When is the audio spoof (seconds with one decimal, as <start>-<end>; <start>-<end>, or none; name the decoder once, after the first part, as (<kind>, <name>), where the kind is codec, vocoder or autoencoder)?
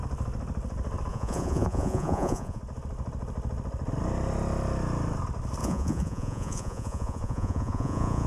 1.1-2.6 (vocoder, Vocos); 5.6-8.3